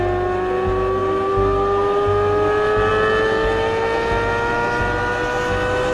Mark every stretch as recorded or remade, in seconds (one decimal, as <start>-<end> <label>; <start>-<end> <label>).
0.0-5.9 recorded